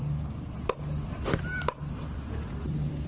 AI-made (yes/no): yes